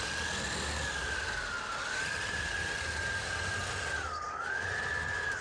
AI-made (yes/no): no